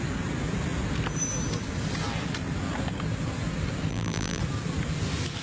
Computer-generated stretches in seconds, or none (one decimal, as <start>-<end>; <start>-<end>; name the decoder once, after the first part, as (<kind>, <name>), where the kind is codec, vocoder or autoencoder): 3.9-4.4 (vocoder, BigVGAN v2)